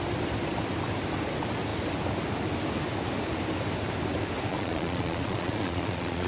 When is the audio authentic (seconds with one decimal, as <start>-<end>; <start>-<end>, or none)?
0.0-4.5